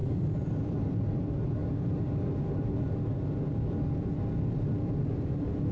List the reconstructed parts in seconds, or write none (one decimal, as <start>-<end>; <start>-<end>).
none